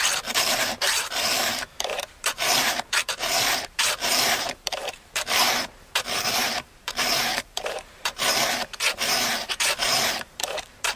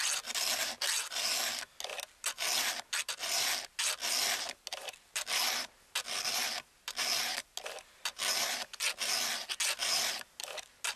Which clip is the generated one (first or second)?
first